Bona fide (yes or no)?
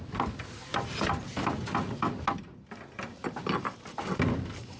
yes